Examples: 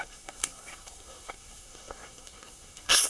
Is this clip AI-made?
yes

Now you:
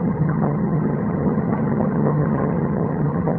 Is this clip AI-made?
yes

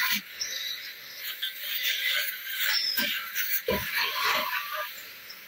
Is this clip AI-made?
yes